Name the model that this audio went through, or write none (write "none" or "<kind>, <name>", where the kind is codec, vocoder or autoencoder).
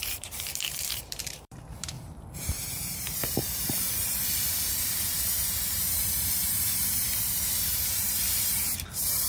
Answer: vocoder, BigVGAN v2